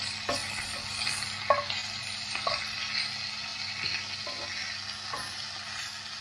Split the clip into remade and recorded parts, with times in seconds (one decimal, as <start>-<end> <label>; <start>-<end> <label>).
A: 0.0-6.2 recorded